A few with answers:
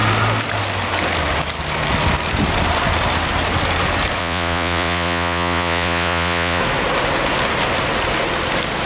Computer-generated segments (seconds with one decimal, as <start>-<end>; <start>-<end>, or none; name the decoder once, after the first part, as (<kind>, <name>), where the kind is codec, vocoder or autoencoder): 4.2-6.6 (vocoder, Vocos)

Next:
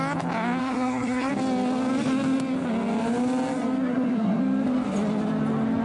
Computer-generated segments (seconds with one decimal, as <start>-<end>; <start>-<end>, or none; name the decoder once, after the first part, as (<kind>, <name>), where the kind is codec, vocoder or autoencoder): 0.6-1.3 (codec, SNAC); 3.9-4.4

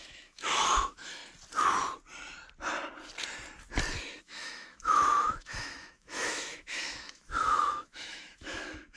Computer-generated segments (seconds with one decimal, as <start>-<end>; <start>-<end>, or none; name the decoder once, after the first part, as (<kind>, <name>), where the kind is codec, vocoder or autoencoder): 0.0-1.2 (autoencoder, DAC-VAE); 4.2-9.0

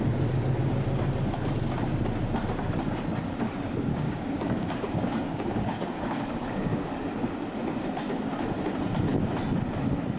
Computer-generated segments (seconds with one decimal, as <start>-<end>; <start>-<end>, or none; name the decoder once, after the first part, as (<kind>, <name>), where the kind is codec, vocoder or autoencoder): 3.9-6.9 (codec, DAC)